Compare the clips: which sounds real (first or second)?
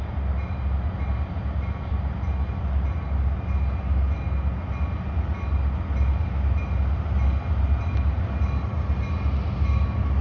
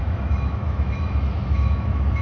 first